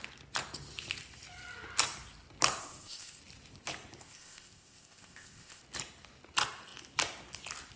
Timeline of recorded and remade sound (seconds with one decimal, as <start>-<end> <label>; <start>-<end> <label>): 0.0-2.6 recorded; 2.6-3.2 remade; 3.2-4.0 recorded; 4.0-5.6 remade; 5.6-7.8 recorded